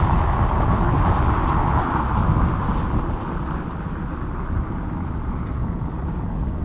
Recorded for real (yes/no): yes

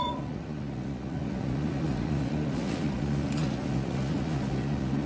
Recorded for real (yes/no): no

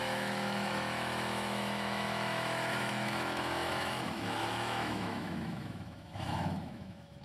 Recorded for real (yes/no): no